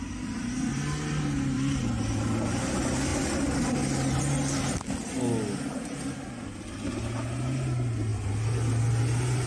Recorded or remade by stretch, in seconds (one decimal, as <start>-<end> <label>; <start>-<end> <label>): 0.0-9.5 recorded